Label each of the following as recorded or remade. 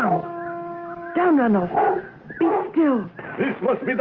recorded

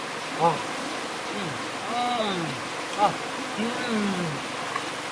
recorded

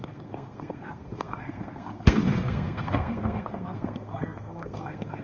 remade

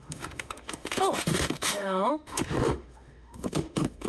remade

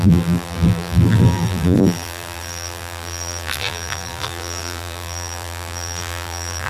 remade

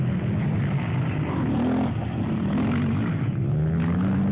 recorded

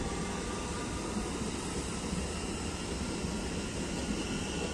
recorded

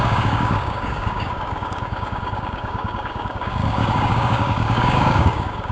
remade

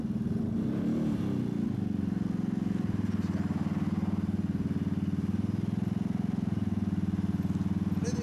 recorded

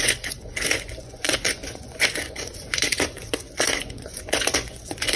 remade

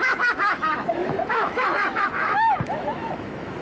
remade